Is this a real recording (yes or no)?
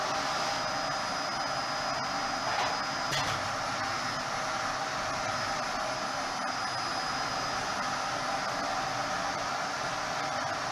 yes